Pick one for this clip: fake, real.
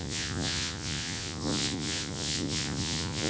fake